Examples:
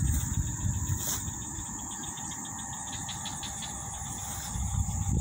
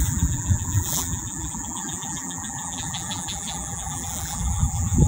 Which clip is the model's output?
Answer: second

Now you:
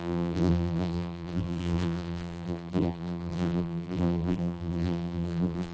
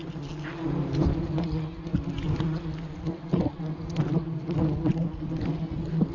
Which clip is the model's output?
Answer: first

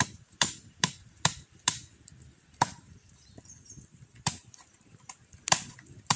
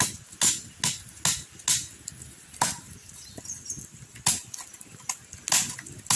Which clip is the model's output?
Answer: first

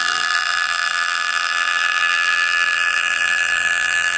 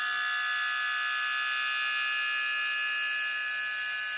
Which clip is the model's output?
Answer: first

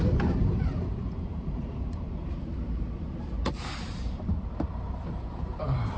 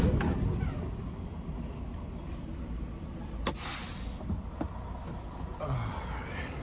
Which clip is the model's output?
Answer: first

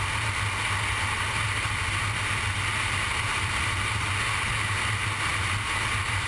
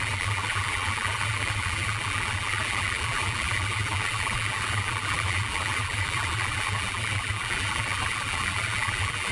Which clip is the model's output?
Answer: second